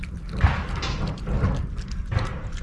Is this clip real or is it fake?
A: real